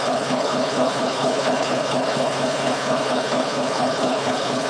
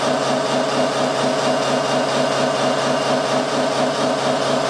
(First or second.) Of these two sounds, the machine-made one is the first